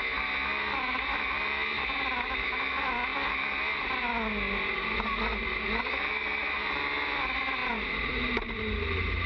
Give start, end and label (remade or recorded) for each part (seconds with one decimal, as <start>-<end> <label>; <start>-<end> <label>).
0.0-9.3 recorded